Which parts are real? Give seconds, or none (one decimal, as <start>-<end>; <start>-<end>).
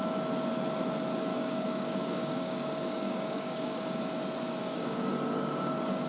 0.0-1.3; 4.0-4.6; 5.1-6.1